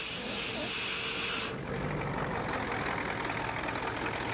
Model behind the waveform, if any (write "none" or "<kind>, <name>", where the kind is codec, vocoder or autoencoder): none